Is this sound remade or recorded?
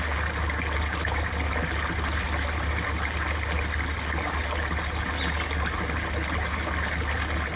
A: recorded